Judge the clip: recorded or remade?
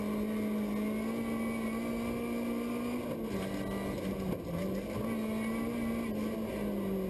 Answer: recorded